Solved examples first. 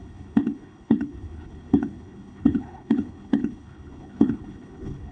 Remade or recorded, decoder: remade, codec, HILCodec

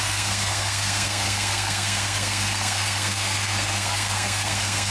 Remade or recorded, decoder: remade, codec, SNAC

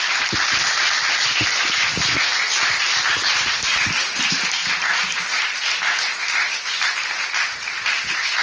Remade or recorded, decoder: recorded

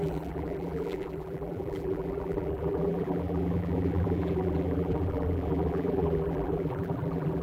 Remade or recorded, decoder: remade, vocoder, BigVGAN v2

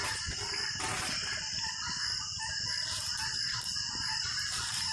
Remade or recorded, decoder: remade, vocoder, BigVGAN v2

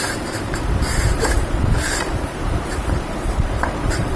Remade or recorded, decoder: remade, vocoder, BigVGAN v2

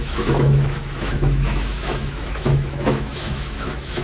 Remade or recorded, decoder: remade, autoencoder, DAC-VAE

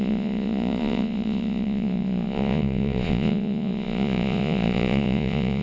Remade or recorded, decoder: remade, vocoder, Vocos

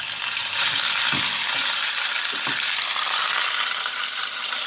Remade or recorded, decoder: recorded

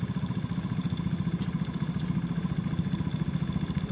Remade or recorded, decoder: recorded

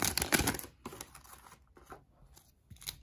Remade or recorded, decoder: recorded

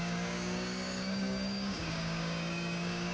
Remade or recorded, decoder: remade, codec, DAC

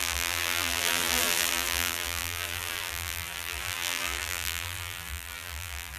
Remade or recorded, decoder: remade, vocoder, BigVGAN v2